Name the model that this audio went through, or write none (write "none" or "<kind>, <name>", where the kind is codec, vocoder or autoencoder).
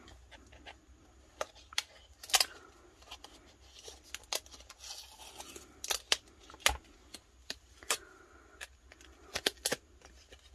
none